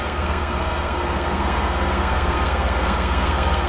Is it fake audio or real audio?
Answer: fake